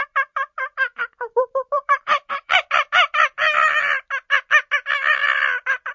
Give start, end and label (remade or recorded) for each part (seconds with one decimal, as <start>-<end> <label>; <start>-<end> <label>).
0.0-2.6 remade; 2.6-5.9 recorded